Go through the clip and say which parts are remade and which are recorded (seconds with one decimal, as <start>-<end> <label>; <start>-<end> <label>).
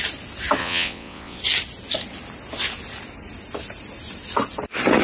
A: 0.0-0.6 recorded; 0.6-1.4 remade; 1.4-5.0 recorded